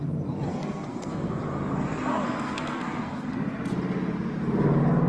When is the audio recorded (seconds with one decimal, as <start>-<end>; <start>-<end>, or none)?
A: 0.0-0.5; 1.4-2.1; 3.3-5.1